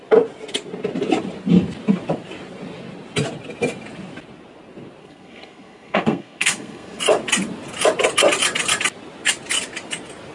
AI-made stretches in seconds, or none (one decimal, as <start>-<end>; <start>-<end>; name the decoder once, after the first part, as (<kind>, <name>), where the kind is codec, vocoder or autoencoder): 5.0-7.0 (codec, SNAC)